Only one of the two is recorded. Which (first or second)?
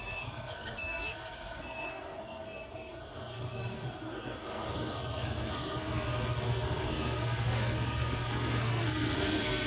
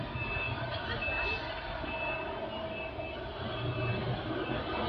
second